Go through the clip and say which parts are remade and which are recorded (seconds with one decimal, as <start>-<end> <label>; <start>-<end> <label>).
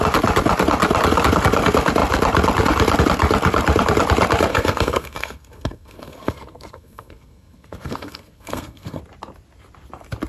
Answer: 0.0-4.5 recorded; 4.5-9.0 remade; 9.0-10.3 recorded